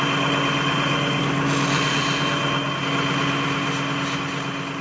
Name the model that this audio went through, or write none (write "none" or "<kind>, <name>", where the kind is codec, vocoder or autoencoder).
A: none